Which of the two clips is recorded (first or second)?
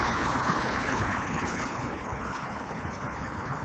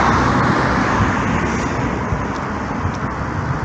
second